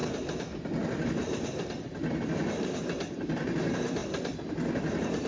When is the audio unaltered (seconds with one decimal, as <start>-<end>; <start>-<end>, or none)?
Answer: 0.0-5.3